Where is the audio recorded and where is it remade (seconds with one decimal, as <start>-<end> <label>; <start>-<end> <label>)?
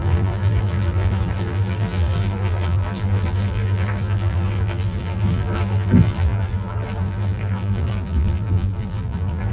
0.0-9.5 remade